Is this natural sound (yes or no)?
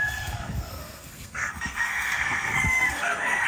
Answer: no